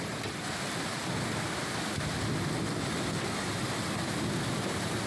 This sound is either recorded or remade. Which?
recorded